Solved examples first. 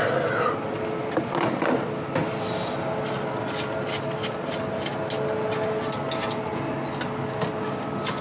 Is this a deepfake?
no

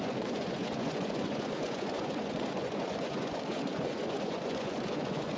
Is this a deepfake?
yes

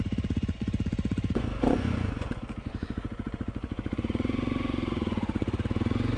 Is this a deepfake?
yes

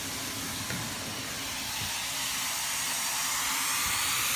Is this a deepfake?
no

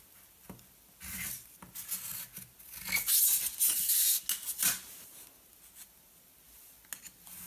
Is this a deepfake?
no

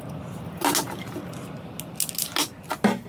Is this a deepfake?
no